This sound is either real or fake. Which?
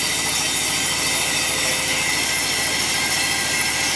real